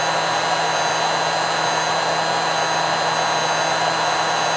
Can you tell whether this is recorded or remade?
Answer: recorded